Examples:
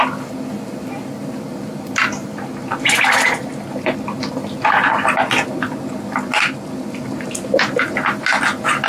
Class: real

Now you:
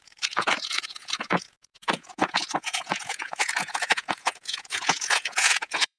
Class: fake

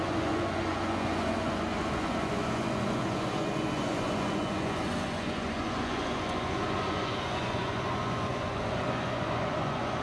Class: fake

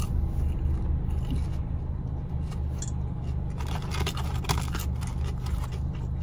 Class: real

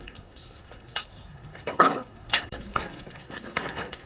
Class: fake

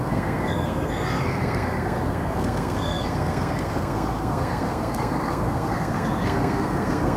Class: fake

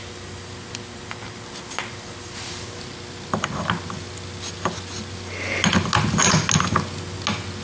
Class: real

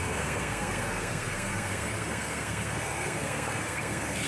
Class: fake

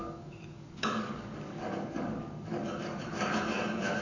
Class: fake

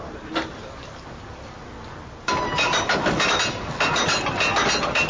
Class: real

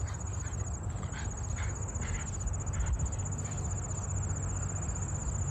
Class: real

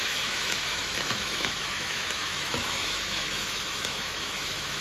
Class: fake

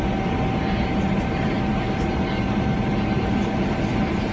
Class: real